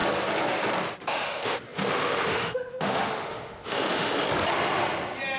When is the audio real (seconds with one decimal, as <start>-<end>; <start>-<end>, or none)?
0.0-1.1; 4.2-5.4